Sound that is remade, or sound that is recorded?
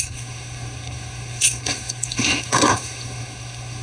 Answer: remade